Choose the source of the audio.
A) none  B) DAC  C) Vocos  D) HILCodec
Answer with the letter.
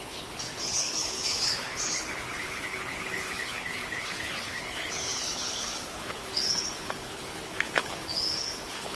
D